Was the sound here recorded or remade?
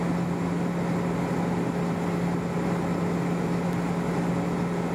recorded